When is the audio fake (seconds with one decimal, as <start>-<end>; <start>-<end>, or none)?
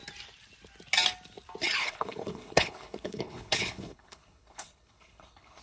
1.8-5.6